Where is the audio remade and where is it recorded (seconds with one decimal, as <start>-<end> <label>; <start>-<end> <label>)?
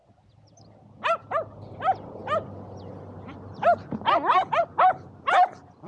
0.0-5.9 recorded